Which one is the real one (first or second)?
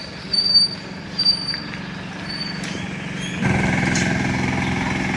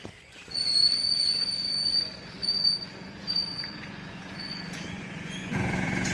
first